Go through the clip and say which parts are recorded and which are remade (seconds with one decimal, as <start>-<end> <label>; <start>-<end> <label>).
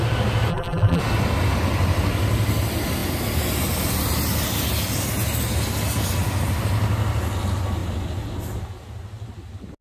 0.0-0.5 recorded; 0.5-1.0 remade; 1.0-9.8 recorded